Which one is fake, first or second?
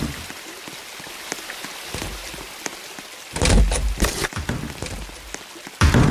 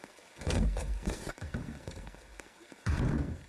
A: second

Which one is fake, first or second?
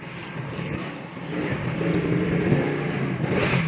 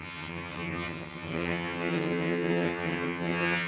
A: second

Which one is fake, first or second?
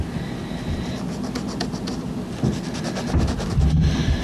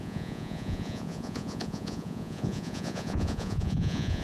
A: second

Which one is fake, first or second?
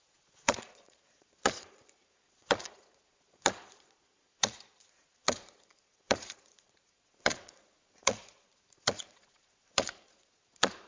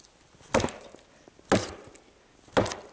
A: first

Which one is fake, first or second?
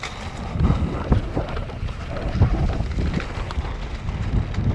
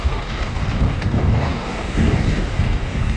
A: second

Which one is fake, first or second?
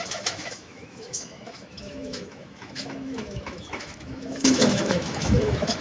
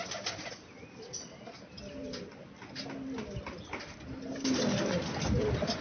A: first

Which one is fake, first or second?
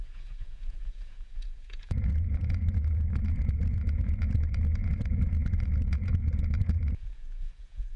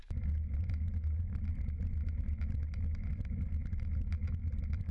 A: first